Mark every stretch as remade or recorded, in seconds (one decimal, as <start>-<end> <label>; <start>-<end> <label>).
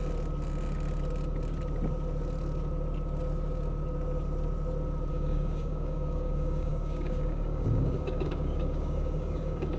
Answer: 0.0-5.1 recorded; 5.1-9.8 remade